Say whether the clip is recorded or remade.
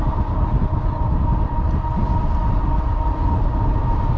recorded